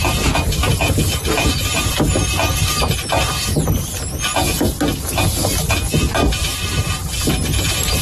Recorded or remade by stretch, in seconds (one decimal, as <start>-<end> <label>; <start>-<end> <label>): 0.0-8.0 recorded